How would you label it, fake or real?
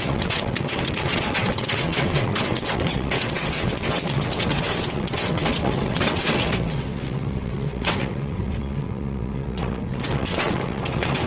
fake